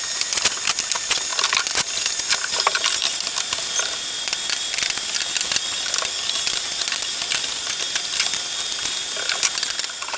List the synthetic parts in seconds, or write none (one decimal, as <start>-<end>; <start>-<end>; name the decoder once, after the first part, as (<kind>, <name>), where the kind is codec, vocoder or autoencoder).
none